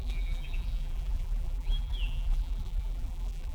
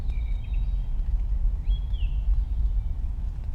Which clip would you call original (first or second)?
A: second